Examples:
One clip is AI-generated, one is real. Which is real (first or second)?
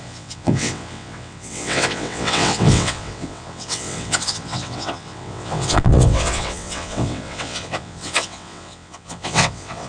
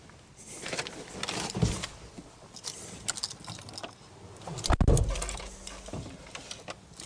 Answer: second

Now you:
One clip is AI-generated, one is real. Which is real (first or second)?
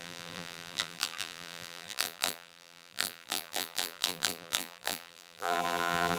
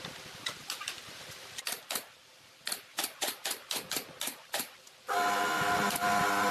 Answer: second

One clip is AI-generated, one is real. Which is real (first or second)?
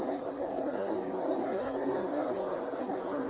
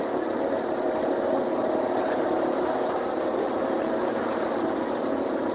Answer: second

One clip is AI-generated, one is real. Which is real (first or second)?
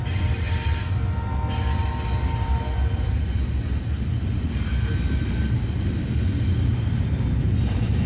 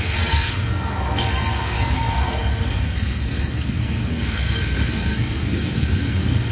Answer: first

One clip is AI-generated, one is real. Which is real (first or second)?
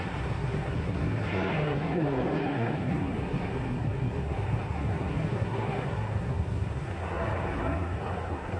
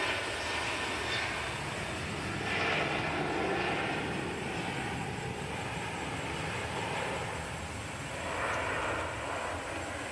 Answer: second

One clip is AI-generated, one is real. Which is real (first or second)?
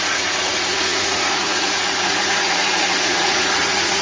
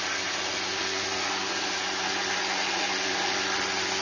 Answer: second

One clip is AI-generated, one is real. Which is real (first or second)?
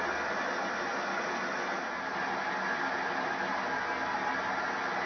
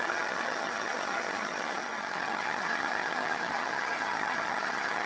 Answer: first